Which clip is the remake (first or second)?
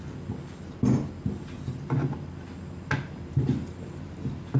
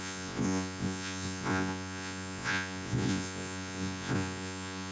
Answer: second